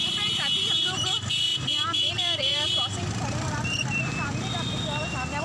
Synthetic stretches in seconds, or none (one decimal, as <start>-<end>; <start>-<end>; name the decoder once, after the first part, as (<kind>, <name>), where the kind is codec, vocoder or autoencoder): 2.5-4.0 (vocoder, BigVGAN v2)